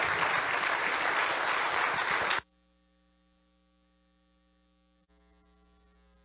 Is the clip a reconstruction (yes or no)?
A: no